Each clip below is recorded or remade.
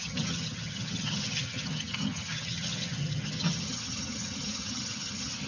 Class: remade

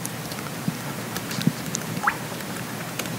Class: remade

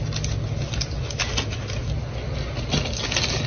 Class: recorded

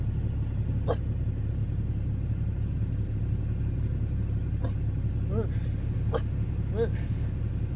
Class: recorded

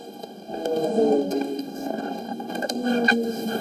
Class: remade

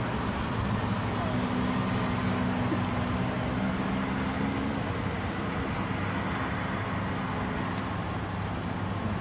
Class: recorded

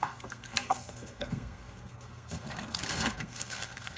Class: remade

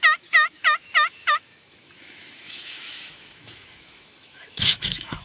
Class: remade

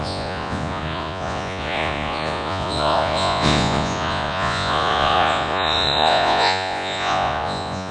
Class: remade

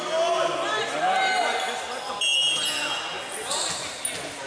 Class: recorded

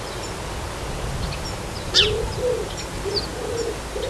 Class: recorded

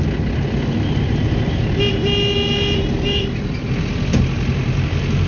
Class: recorded